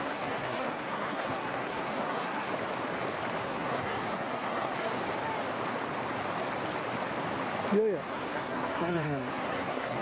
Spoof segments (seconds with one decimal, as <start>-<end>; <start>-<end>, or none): 0.0-2.5; 3.4-5.0; 8.1-10.0